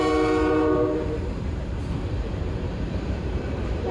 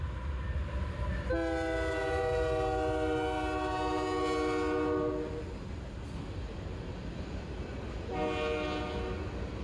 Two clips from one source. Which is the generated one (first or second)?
first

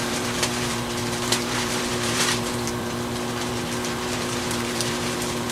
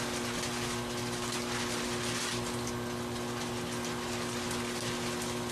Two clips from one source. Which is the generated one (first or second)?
first